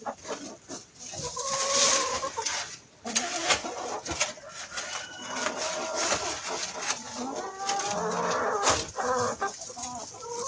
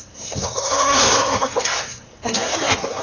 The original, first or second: first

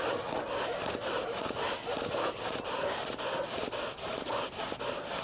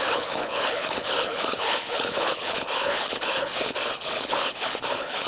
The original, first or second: first